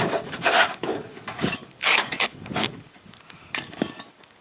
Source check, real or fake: fake